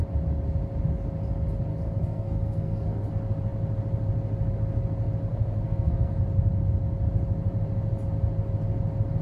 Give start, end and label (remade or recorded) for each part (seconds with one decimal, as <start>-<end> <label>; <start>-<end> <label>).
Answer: 0.0-1.7 recorded; 1.7-3.1 remade; 3.1-5.3 recorded; 5.3-6.2 remade; 6.2-9.2 recorded

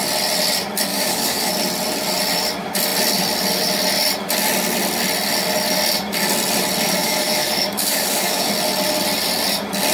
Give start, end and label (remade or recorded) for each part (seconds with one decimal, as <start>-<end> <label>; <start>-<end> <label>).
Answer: 0.0-0.9 recorded; 0.9-1.5 remade; 1.5-7.0 recorded; 7.0-8.5 remade; 8.5-9.9 recorded

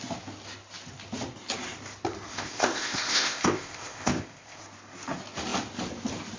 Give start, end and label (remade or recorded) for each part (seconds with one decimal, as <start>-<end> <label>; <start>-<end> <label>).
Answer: 0.0-2.3 recorded; 2.3-4.6 remade; 4.6-6.4 recorded

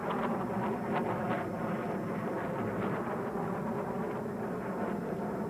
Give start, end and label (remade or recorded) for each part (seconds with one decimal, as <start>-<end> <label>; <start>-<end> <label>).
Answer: 0.0-5.5 recorded

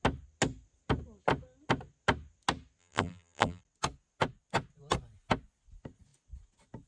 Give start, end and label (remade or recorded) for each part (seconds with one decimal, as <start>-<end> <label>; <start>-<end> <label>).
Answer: 0.0-2.8 recorded; 2.8-3.6 remade; 3.6-6.9 recorded